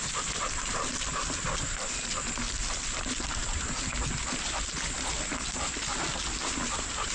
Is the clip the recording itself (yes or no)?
yes